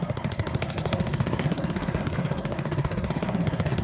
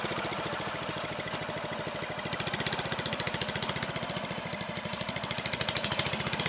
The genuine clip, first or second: second